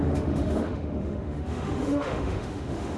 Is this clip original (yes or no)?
no